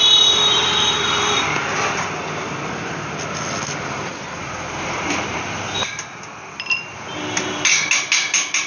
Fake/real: real